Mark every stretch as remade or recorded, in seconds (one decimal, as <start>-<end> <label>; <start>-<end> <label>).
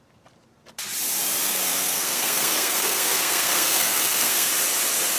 0.0-1.4 recorded; 1.4-4.5 remade; 4.5-5.2 recorded